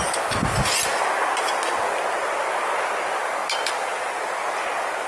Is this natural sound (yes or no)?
yes